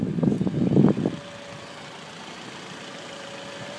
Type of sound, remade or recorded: recorded